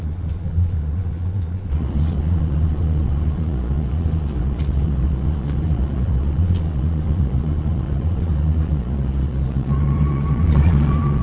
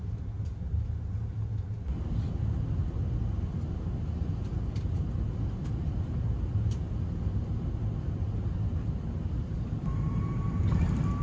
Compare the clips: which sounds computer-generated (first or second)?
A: first